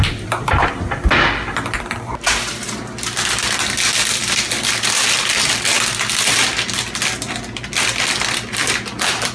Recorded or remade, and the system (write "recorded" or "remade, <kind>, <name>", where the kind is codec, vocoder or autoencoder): recorded